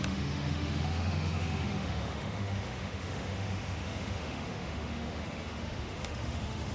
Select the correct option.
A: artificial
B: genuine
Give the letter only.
A